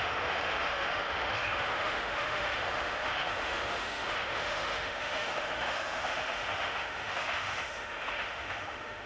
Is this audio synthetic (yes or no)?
yes